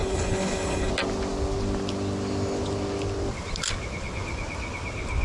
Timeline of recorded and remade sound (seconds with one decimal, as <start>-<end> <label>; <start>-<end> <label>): 0.0-0.9 remade; 0.9-5.2 recorded